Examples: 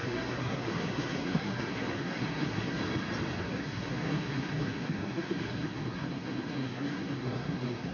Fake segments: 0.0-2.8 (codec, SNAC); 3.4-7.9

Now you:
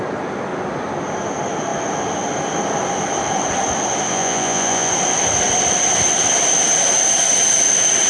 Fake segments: 4.1-4.9 (vocoder, Vocos)

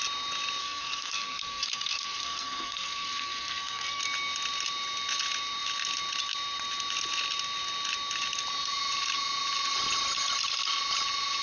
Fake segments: 0.6-4.0 (codec, SNAC)

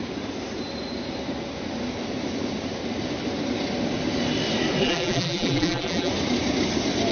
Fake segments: 4.8-6.1 (vocoder, BigVGAN v2)

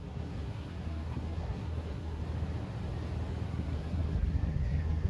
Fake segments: 0.0-2.2 (codec, SNAC); 3.5-5.1

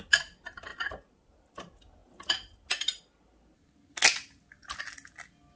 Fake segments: none